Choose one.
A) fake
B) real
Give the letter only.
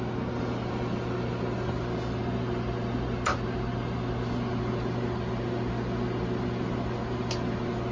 B